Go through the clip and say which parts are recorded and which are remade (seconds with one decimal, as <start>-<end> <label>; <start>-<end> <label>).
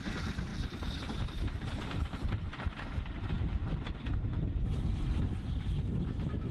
0.0-6.5 recorded